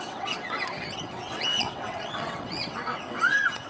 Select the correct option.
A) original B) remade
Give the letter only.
B